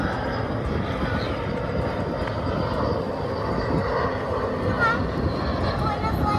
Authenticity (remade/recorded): recorded